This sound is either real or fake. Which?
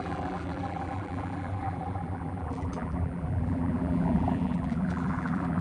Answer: fake